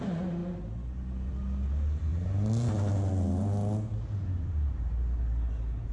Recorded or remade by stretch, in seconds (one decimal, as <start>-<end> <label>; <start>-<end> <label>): 0.0-5.9 recorded